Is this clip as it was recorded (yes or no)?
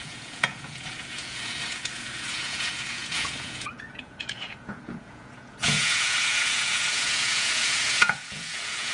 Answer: no